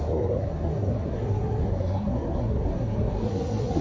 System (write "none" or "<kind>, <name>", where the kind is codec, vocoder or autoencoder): codec, SNAC